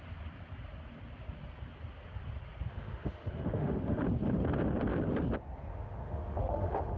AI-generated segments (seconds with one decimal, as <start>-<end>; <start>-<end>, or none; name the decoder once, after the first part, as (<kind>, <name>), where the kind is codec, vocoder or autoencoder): 2.7-4.0 (autoencoder, DAC-VAE); 5.7-7.0